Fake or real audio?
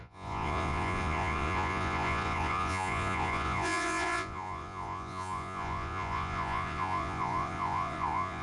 fake